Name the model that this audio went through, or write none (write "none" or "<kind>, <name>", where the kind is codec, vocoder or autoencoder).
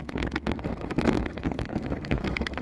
codec, SNAC